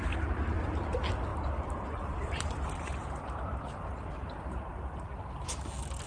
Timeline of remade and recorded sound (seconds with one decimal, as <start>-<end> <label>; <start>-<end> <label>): 0.0-1.3 recorded; 1.3-3.6 remade; 3.6-4.2 recorded; 4.2-5.2 remade; 5.2-6.1 recorded